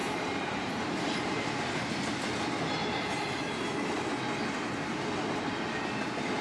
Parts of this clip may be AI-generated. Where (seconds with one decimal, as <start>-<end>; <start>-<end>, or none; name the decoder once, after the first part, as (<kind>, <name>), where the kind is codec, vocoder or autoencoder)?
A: 0.0-1.5 (vocoder, BigVGAN v2)